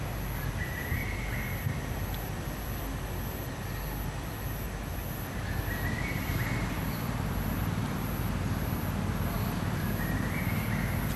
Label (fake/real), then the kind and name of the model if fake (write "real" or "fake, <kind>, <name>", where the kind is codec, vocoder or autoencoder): real